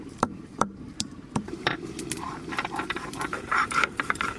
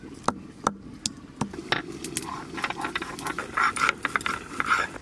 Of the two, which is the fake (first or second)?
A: first